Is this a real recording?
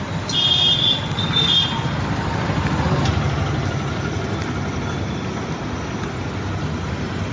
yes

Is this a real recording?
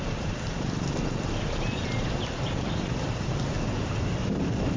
yes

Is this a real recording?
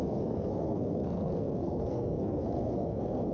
no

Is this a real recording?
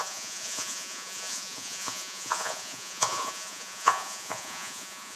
no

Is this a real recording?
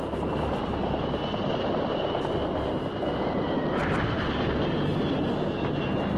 yes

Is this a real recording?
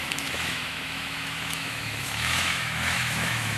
no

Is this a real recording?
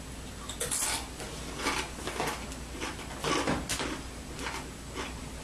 yes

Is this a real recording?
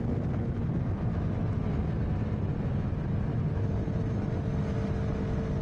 yes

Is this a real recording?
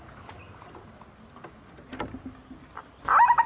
yes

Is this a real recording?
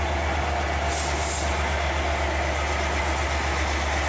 yes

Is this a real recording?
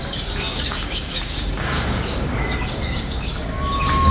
no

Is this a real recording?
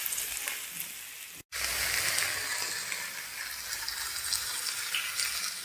yes